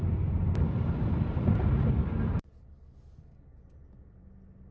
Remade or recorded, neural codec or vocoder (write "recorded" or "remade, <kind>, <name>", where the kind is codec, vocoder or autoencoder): remade, vocoder, BigVGAN v2